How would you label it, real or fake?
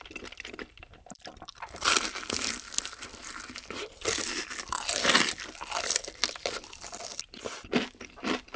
fake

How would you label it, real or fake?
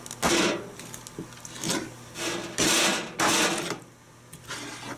real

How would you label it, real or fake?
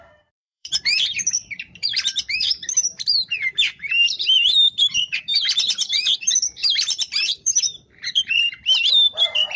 fake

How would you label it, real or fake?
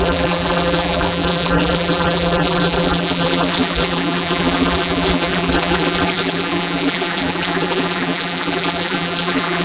fake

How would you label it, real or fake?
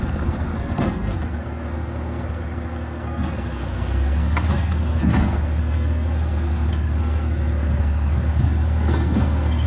fake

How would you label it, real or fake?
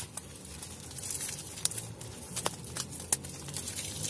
real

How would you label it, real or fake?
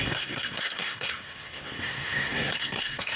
fake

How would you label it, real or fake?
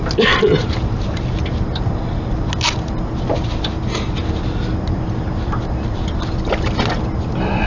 real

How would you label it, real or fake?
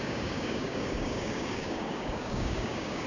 fake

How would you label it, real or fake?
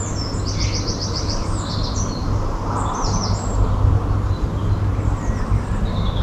real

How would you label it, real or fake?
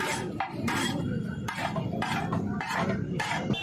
fake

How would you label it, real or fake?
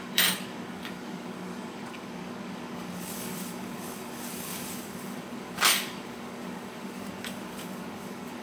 fake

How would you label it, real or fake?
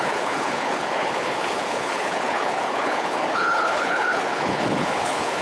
fake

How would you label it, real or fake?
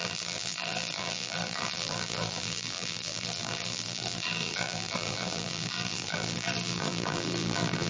fake